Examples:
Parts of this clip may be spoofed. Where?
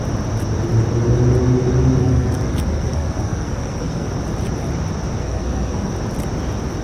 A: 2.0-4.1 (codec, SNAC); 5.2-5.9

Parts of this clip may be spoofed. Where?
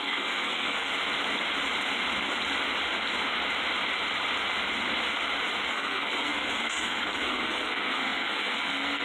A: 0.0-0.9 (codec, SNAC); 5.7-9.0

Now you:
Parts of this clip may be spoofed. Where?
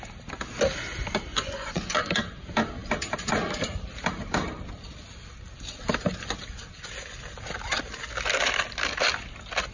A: 1.3-2.1 (vocoder, Vocos)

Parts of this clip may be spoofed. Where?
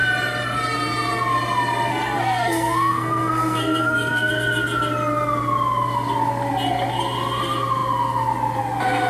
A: 1.9-4.3 (codec, SNAC)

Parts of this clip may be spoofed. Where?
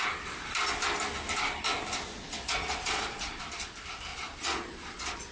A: 2.1-3.4 (vocoder, Vocos); 4.1-5.3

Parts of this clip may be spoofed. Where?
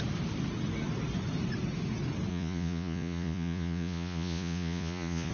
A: 2.3-5.3 (vocoder, Vocos)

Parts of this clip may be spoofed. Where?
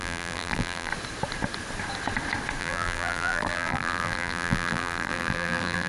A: 0.0-0.9 (vocoder, BigVGAN v2); 2.6-5.9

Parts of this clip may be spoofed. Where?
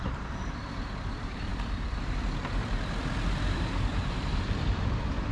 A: 0.0-5.3 (vocoder, BigVGAN v2)